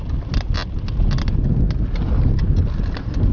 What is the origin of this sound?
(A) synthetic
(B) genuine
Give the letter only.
B